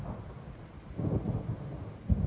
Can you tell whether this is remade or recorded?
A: recorded